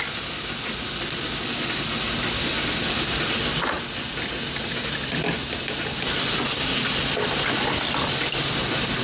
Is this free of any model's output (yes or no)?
yes